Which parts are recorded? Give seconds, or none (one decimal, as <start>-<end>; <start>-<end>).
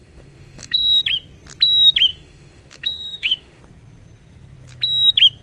1.0-2.1; 3.6-5.4